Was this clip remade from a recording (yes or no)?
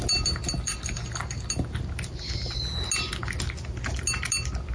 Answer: no